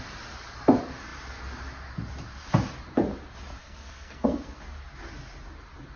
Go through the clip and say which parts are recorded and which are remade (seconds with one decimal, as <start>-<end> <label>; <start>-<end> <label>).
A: 0.0-3.6 recorded; 3.6-4.6 remade; 4.6-6.0 recorded